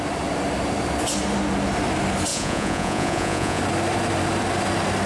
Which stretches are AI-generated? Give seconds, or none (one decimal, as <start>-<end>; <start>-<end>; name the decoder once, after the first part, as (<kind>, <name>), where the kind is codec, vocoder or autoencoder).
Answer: 2.3-3.6 (vocoder, Vocos)